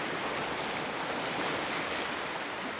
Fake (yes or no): no